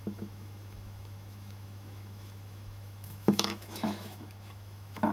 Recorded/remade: remade